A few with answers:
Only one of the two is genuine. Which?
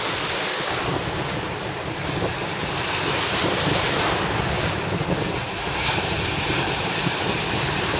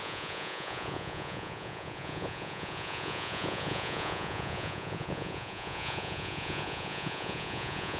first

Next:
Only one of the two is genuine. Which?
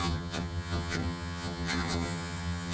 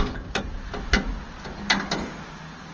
second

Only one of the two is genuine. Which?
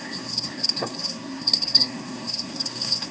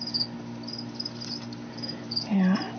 second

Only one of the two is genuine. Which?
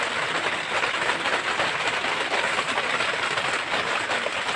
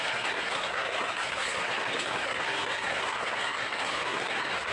first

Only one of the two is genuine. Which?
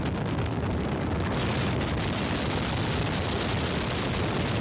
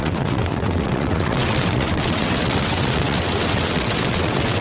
first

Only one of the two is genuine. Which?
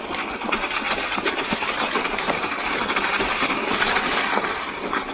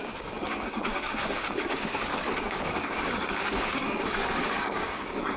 first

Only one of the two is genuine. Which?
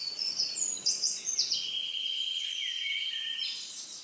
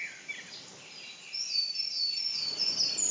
second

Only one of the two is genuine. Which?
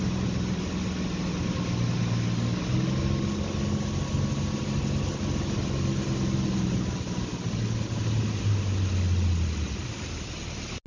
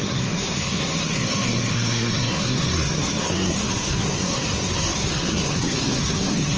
first